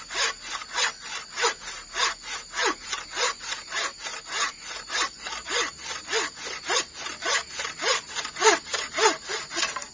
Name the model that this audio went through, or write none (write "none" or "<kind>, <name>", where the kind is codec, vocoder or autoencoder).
none